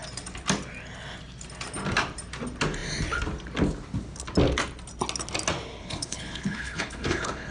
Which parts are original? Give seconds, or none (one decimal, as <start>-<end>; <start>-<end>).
0.0-5.8